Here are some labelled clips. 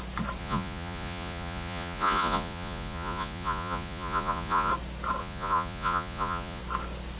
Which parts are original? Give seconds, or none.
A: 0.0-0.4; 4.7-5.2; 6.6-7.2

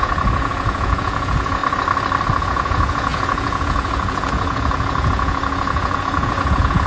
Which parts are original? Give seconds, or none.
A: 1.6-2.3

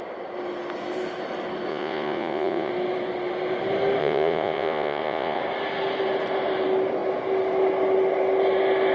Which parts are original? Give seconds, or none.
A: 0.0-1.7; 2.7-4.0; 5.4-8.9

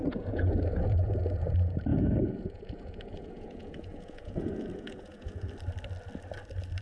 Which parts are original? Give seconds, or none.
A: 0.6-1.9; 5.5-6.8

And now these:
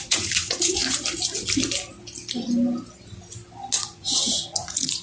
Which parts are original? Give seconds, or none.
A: 0.8-3.8